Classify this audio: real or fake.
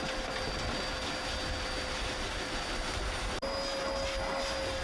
real